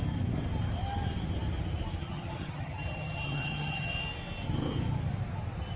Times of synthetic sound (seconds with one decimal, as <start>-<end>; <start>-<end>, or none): 2.0-3.9